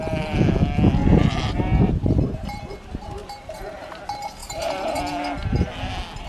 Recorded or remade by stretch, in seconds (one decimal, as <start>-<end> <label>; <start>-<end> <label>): 0.0-1.0 recorded; 1.0-2.6 remade; 2.6-3.2 recorded; 3.2-4.0 remade; 4.0-4.4 recorded; 4.4-5.0 remade; 5.0-6.3 recorded